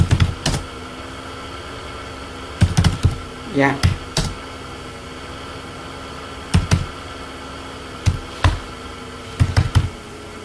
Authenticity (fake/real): real